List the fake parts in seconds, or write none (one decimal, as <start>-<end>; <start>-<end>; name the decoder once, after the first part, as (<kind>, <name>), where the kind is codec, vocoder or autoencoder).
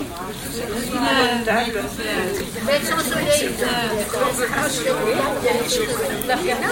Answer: 0.0-1.3 (vocoder, BigVGAN v2); 1.8-6.7